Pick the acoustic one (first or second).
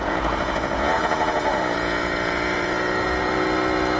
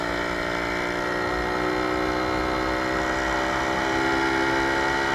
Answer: second